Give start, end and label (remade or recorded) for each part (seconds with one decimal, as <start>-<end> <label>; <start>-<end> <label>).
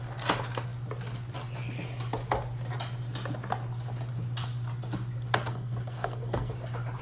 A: 0.0-5.5 recorded; 5.5-6.5 remade; 6.5-7.0 recorded